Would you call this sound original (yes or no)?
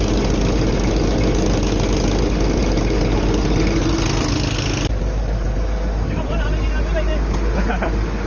yes